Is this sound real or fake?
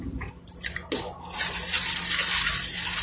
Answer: real